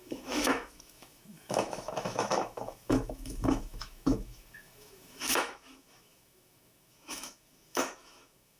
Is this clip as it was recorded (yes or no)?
no